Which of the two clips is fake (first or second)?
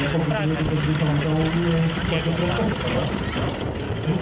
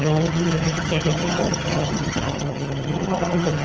second